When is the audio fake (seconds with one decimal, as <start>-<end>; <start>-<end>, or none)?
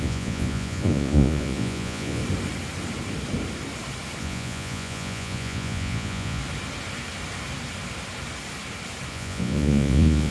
0.0-2.2; 4.2-6.4; 9.1-10.3